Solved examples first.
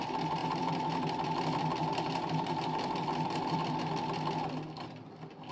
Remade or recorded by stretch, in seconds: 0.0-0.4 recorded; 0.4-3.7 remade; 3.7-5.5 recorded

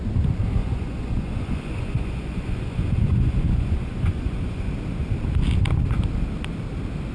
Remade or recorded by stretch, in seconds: 0.0-0.6 recorded; 0.6-4.7 remade; 4.7-7.1 recorded

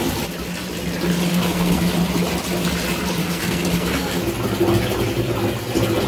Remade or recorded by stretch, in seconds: 0.0-1.3 recorded; 1.3-1.9 remade; 1.9-3.2 recorded; 3.2-4.2 remade; 4.2-6.1 recorded

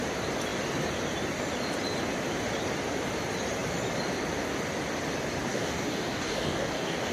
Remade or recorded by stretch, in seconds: 0.0-5.5 recorded; 5.5-7.1 remade